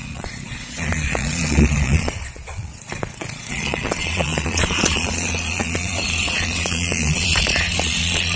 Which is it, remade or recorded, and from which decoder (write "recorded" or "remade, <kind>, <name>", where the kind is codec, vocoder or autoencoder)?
remade, vocoder, Vocos